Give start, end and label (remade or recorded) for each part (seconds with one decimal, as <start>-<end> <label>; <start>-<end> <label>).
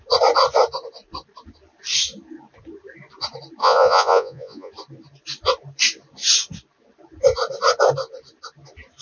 0.0-3.6 recorded; 3.6-4.7 remade; 4.7-9.0 recorded